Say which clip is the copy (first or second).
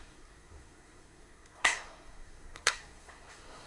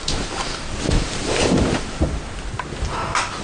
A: first